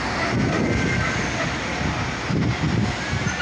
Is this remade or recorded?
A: recorded